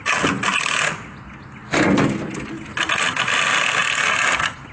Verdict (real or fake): real